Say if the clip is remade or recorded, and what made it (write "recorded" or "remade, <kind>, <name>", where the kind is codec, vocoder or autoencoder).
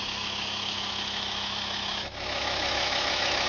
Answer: remade, autoencoder, DAC-VAE